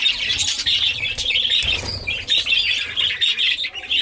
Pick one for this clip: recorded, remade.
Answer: recorded